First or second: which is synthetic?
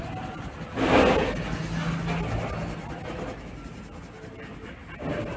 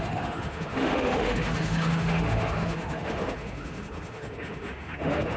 second